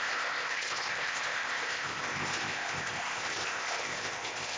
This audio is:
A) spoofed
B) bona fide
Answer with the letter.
A